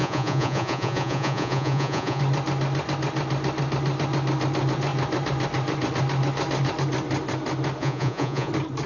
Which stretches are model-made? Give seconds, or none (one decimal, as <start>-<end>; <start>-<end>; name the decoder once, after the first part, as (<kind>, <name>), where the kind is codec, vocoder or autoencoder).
0.0-2.2 (vocoder, Vocos); 7.8-8.5